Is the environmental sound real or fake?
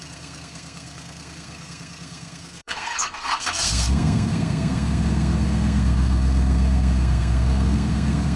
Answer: fake